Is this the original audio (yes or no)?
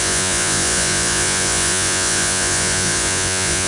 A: no